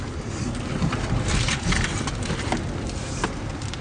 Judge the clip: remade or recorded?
recorded